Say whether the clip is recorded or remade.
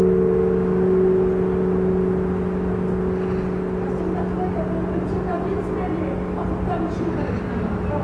recorded